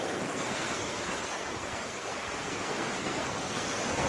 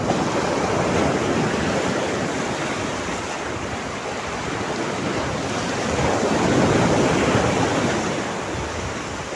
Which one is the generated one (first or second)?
first